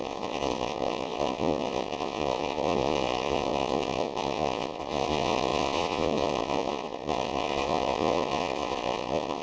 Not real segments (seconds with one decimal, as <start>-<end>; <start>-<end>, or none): 0.0-9.4